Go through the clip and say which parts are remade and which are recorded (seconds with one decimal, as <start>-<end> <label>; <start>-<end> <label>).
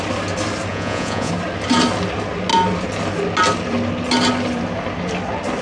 0.0-0.7 recorded; 0.7-1.3 remade; 1.3-5.6 recorded